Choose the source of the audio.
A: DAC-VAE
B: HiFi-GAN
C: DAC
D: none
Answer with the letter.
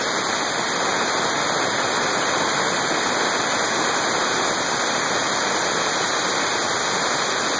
D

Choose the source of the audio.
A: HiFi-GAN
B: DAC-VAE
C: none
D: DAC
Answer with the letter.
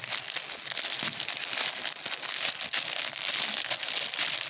C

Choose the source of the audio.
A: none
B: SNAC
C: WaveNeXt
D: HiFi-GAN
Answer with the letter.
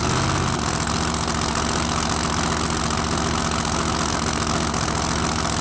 A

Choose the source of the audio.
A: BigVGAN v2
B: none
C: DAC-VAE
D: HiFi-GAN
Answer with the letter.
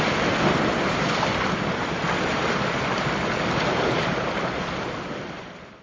B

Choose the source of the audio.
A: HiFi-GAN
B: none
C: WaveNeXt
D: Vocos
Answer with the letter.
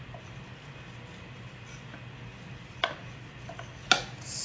B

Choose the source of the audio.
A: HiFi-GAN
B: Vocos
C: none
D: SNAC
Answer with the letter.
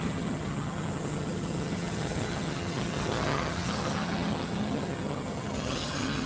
A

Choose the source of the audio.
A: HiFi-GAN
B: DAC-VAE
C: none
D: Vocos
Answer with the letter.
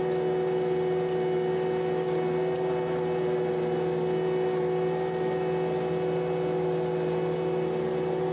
C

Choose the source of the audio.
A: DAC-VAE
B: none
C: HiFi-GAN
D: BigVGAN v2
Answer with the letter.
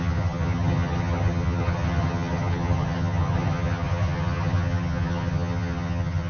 C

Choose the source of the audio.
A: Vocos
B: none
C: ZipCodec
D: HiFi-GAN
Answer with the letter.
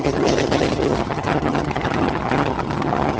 D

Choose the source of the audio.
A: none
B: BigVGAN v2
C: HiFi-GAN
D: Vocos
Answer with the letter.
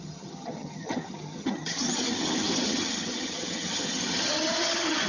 C